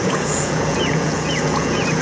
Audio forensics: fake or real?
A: fake